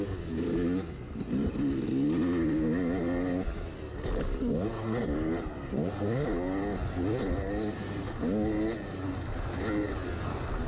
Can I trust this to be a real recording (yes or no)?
yes